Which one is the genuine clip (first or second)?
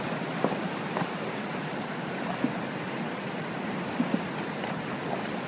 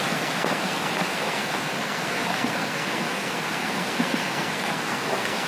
first